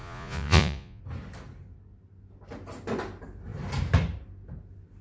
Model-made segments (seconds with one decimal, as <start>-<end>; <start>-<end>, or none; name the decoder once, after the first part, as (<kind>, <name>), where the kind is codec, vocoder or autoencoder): 0.0-1.0 (vocoder, Vocos)